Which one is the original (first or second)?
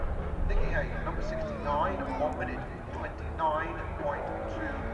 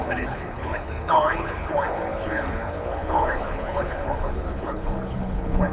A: first